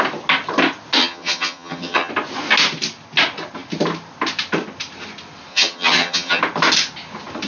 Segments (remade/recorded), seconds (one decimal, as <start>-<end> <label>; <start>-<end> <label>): 0.0-1.0 recorded; 1.0-2.1 remade; 2.1-5.5 recorded; 5.5-6.4 remade; 6.4-7.5 recorded

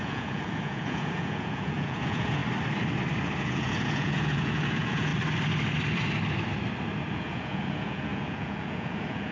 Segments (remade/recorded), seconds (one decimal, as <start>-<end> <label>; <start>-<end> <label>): 0.0-2.4 remade; 2.4-3.4 recorded; 3.4-5.1 remade; 5.1-7.1 recorded; 7.1-9.3 remade

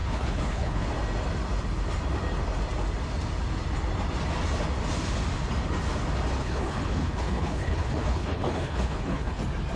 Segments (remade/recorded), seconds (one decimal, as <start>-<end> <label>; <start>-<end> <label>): 0.0-0.9 remade; 0.9-6.4 recorded; 6.4-9.4 remade; 9.4-9.8 recorded

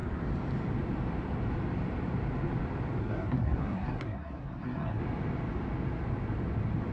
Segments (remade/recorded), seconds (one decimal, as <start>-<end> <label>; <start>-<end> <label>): 0.0-3.0 recorded; 3.0-5.0 remade; 5.0-6.9 recorded

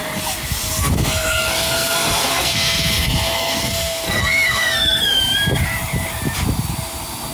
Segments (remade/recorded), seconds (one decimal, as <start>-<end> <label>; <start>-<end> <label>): 0.0-0.8 recorded; 0.8-5.2 remade; 5.2-7.3 recorded

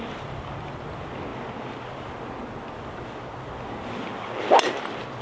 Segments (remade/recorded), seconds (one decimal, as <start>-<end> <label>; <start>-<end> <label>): 0.0-5.2 recorded

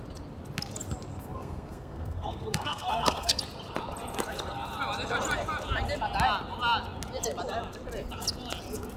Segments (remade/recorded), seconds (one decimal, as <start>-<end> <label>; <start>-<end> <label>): 0.0-1.1 recorded; 1.1-3.4 remade; 3.4-9.0 recorded